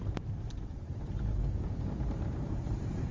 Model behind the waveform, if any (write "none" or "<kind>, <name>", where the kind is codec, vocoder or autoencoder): vocoder, BigVGAN v2